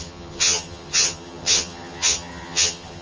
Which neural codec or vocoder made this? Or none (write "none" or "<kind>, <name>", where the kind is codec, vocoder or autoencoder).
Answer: vocoder, HiFi-GAN